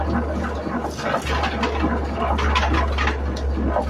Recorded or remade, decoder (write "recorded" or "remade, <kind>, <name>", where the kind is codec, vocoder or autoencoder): recorded